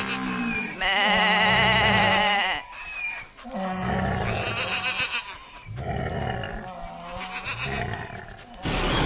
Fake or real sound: real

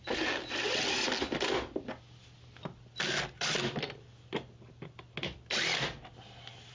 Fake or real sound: real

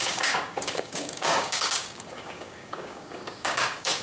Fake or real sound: fake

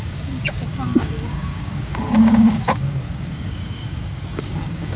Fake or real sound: fake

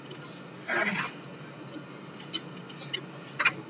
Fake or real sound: real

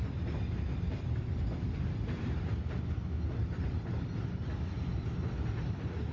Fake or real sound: real